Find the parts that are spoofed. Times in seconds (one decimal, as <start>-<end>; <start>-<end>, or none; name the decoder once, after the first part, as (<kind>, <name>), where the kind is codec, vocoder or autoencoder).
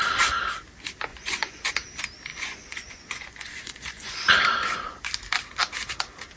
1.1-1.7 (vocoder, Vocos); 2.3-5.0